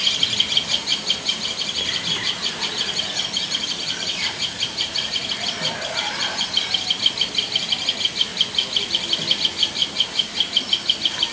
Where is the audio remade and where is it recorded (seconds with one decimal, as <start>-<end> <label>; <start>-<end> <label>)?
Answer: 0.0-0.9 recorded; 0.9-5.3 remade; 5.3-11.3 recorded